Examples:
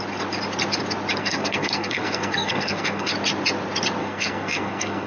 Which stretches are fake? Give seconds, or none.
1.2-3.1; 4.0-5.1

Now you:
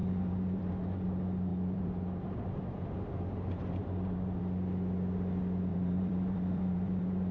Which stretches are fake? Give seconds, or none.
0.0-0.7; 1.5-4.4; 5.7-7.3